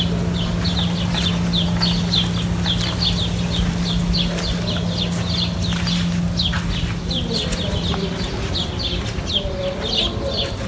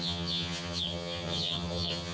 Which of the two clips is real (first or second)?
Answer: first